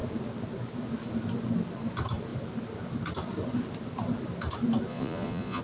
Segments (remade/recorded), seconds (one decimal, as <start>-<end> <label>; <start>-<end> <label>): 0.0-4.9 recorded; 4.9-5.6 remade